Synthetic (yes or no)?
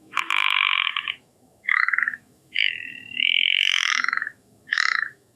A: yes